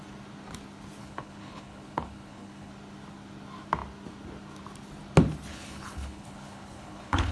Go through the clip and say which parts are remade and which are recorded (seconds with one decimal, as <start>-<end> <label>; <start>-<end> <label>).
0.0-1.0 recorded; 1.0-2.7 remade; 2.7-5.5 recorded; 5.5-7.3 remade